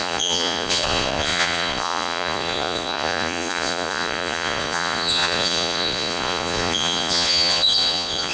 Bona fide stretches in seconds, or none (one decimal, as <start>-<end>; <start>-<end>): none